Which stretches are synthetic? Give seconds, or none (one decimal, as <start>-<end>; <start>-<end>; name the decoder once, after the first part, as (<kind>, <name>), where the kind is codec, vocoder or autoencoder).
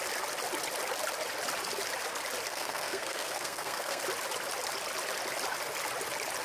2.5-4.0 (codec, SNAC)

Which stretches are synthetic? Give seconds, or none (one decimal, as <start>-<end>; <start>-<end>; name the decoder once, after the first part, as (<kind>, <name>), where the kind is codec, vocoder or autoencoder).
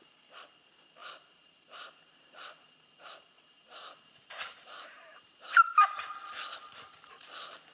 1.0-5.6 (vocoder, BigVGAN v2)